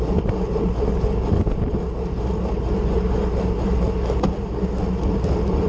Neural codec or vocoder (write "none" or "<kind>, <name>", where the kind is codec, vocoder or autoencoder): none